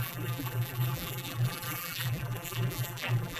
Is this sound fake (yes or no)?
yes